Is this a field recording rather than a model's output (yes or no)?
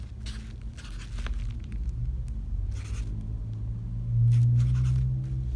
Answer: yes